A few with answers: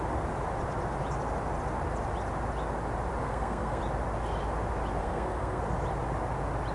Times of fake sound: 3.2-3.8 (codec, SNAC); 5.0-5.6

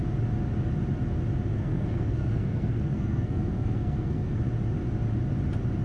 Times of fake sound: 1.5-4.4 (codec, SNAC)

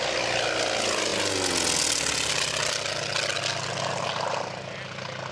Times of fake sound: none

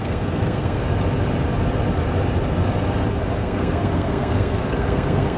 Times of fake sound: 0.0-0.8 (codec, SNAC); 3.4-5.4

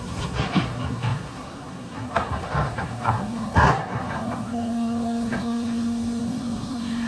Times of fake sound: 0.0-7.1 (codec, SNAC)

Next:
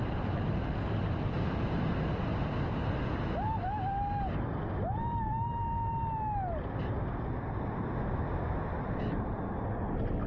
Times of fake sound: none